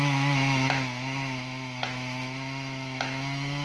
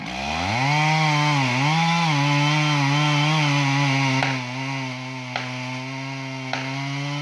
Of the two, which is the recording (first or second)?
second